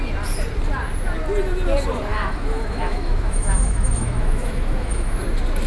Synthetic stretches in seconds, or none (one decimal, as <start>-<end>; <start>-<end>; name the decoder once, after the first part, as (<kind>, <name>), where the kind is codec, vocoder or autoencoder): 2.1-5.2 (autoencoder, DAC-VAE)